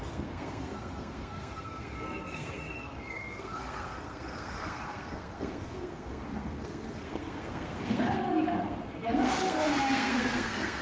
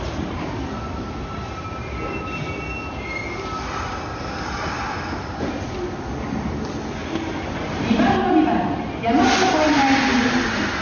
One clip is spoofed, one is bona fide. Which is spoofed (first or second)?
first